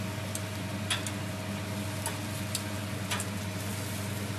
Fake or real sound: real